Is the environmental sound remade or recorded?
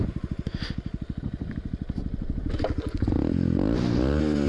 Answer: recorded